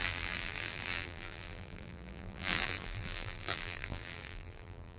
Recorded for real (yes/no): no